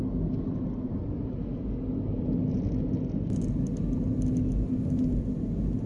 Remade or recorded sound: recorded